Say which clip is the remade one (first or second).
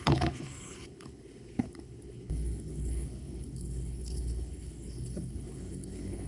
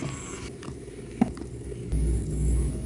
first